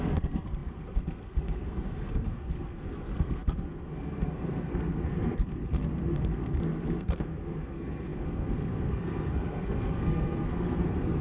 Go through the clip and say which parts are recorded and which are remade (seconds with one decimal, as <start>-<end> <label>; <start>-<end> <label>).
0.0-11.2 remade